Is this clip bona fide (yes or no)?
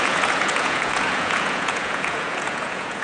no